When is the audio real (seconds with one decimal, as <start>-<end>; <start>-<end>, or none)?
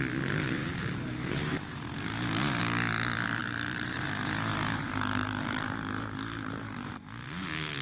0.0-0.6; 2.6-3.4; 6.9-7.8